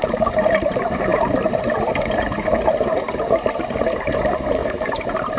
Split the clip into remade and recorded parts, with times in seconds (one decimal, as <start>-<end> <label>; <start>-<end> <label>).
0.0-0.7 remade; 0.7-4.6 recorded; 4.6-5.4 remade